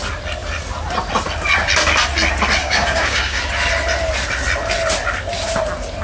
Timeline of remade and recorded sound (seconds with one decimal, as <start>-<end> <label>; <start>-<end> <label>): 0.0-2.6 recorded; 2.6-3.4 remade; 3.4-6.0 recorded